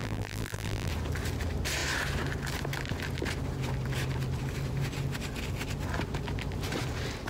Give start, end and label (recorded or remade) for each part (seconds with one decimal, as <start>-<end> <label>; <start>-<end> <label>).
0.0-0.9 remade; 0.9-7.3 recorded